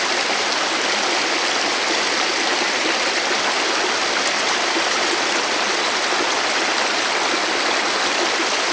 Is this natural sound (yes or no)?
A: yes